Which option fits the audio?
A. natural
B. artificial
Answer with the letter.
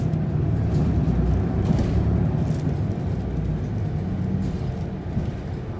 A